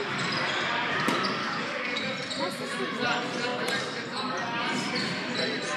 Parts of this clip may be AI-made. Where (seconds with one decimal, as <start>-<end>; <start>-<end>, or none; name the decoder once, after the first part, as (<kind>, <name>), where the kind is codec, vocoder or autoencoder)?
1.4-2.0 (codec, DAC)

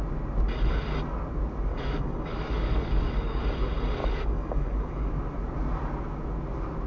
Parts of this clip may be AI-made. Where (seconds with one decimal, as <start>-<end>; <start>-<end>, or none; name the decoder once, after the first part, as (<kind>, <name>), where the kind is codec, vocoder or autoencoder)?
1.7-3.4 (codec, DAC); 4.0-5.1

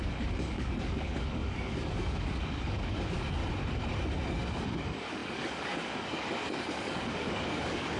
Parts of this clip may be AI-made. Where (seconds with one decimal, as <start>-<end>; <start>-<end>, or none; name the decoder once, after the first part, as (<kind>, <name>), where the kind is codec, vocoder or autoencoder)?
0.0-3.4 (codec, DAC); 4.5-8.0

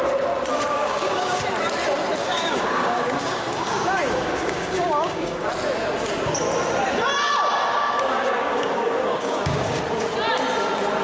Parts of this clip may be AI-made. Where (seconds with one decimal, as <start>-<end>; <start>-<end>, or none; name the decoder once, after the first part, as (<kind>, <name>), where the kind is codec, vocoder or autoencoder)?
0.8-1.4 (codec, DAC); 2.2-5.5; 7.7-9.8

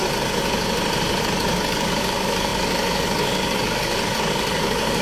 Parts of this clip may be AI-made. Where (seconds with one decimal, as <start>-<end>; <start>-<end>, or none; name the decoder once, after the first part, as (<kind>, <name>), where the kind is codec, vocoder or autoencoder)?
1.2-5.0 (codec, DAC)

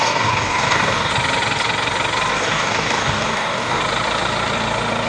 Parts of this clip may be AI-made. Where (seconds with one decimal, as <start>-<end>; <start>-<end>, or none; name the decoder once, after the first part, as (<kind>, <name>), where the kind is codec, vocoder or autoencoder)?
0.0-1.1 (codec, DAC); 2.3-3.8

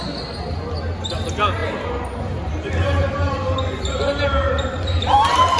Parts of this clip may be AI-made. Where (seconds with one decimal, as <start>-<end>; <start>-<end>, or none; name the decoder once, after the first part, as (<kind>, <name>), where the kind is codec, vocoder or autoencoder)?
none